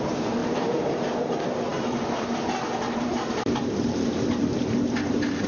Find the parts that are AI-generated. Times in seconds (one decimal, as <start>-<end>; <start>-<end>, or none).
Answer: 0.0-5.5